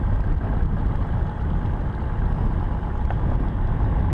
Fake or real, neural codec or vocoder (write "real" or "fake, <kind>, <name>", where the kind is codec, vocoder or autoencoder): real